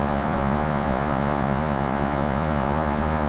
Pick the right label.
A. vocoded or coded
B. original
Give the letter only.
A